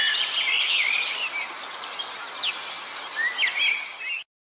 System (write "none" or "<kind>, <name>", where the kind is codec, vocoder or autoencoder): none